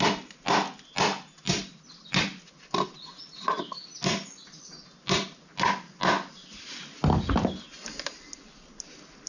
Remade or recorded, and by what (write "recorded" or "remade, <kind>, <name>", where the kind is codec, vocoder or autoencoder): recorded